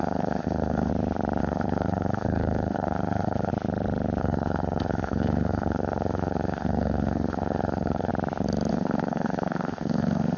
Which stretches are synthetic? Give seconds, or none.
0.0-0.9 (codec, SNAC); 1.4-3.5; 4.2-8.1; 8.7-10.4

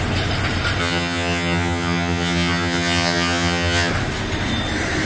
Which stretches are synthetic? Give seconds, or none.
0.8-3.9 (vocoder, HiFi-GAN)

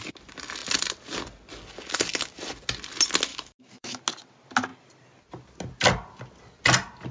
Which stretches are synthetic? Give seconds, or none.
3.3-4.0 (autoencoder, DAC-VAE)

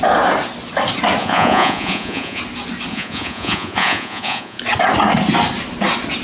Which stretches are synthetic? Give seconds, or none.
1.2-2.4 (vocoder, Vocos); 2.9-4.6

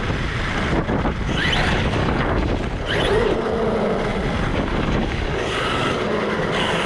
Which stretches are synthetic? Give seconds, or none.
2.0-2.5 (codec, DAC); 4.5-6.9

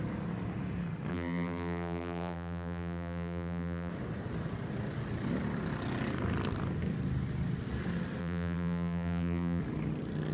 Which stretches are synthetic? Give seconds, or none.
1.1-3.9 (vocoder, BigVGAN v2); 8.2-9.6

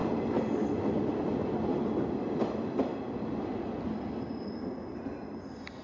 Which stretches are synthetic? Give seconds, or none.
none

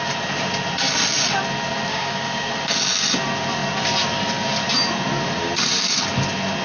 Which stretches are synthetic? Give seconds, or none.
1.9-2.5 (codec, DAC)